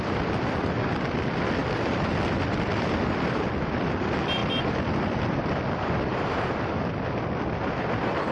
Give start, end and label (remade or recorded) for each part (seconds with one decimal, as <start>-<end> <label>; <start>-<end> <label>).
0.0-1.6 recorded; 1.6-3.9 remade; 3.9-4.4 recorded; 4.4-5.5 remade; 5.5-6.1 recorded; 6.1-6.9 remade; 6.9-8.3 recorded